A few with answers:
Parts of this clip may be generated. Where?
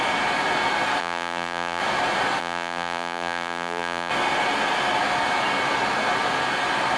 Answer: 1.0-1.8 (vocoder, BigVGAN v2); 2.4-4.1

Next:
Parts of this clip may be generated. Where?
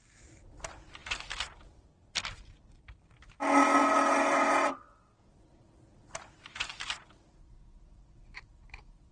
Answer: none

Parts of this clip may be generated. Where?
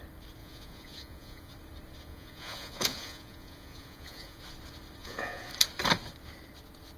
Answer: 0.4-1.5 (vocoder, Vocos); 2.1-4.4; 5.0-5.5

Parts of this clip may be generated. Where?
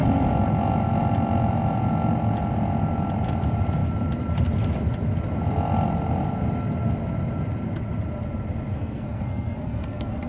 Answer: 8.7-10.3 (codec, SNAC)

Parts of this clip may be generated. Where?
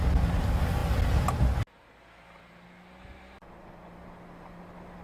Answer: none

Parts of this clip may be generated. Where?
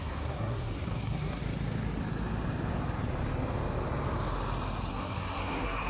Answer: 0.0-1.4 (codec, SNAC); 4.9-5.9